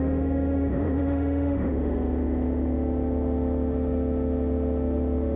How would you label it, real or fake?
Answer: fake